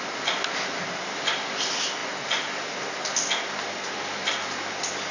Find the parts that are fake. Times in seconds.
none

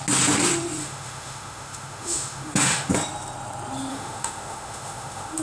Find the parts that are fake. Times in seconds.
0.8-2.9; 3.9-5.4

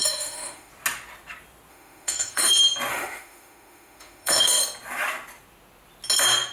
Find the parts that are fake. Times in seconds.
0.0-0.7; 1.7-2.5; 2.9-4.6

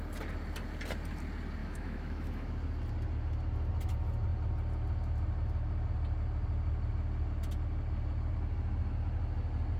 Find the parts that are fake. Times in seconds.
1.6-2.5

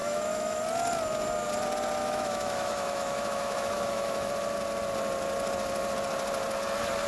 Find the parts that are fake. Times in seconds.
0.0-0.6; 2.0-4.3

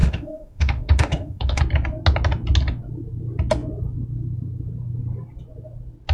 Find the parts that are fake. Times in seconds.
0.0-1.6